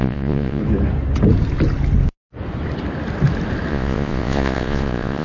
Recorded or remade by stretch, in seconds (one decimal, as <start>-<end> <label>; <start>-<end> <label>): 0.0-0.6 remade; 0.6-3.7 recorded; 3.7-5.2 remade